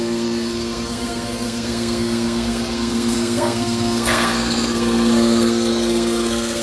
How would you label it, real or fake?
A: fake